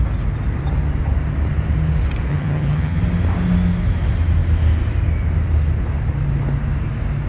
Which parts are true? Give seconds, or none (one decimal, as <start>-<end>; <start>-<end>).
0.0-2.3; 3.0-7.3